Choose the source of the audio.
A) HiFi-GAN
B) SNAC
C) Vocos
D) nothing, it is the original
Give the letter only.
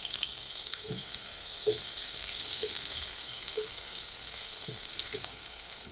B